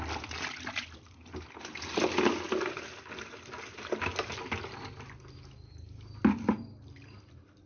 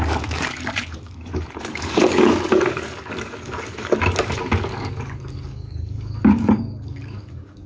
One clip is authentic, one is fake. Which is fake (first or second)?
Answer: second